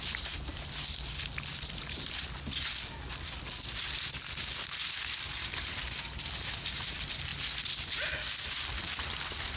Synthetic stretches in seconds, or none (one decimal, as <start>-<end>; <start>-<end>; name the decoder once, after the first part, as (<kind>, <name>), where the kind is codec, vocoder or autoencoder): none